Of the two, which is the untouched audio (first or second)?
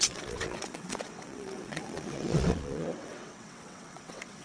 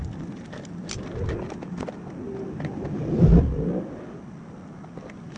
second